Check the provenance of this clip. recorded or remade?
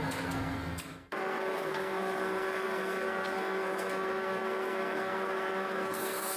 remade